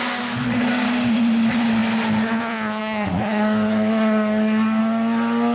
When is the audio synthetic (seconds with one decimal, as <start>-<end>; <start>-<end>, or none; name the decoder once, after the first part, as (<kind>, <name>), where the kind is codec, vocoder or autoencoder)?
2.8-4.8 (codec, DAC)